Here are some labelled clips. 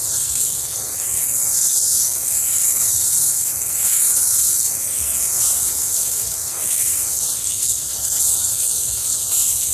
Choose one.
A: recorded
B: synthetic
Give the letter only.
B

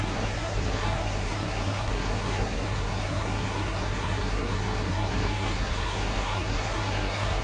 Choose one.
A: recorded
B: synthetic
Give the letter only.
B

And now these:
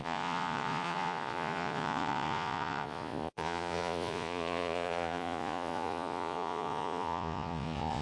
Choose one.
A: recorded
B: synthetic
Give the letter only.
B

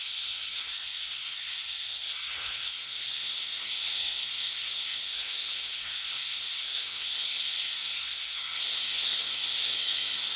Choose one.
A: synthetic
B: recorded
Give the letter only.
A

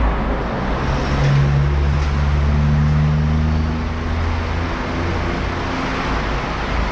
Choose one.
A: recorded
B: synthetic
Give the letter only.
A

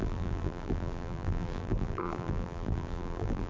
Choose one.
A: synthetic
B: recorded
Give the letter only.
A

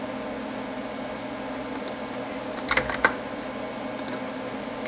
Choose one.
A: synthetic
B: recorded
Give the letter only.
B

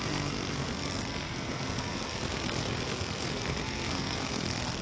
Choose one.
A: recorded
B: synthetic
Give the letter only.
B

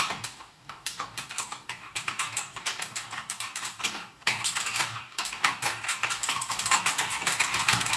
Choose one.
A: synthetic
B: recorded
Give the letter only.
A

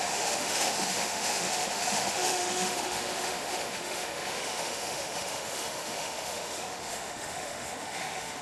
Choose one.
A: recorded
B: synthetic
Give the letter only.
B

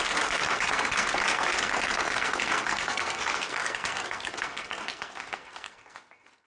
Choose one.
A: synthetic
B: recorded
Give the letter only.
A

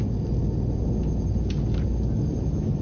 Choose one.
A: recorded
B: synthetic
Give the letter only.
A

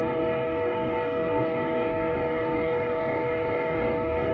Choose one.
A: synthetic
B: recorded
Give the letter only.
A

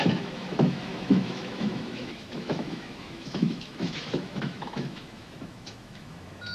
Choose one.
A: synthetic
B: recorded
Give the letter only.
A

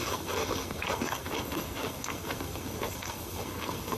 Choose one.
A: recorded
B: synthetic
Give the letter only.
B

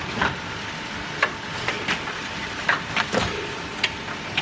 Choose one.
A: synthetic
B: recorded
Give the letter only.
B